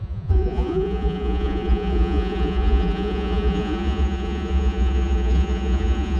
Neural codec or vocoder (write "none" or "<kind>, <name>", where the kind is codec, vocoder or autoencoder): vocoder, Vocos